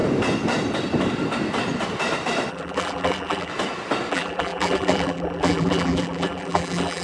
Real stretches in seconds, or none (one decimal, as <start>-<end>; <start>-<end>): 0.0-2.5; 3.5-4.1